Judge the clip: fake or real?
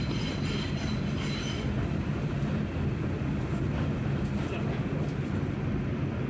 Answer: real